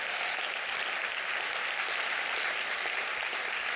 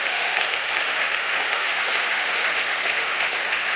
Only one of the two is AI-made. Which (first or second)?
second